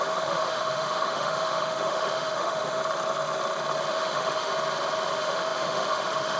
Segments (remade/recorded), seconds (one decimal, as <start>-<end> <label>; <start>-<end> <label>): 0.0-2.8 remade; 2.8-3.9 recorded; 3.9-4.5 remade; 4.5-5.1 recorded; 5.1-6.4 remade